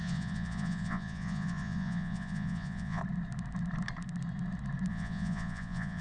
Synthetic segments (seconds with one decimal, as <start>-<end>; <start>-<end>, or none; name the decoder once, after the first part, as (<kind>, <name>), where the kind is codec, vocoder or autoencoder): 0.0-3.0 (vocoder, Vocos); 4.9-6.0